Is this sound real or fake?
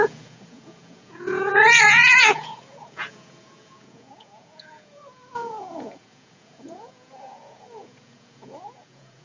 fake